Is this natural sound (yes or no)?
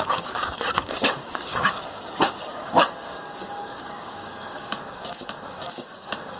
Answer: no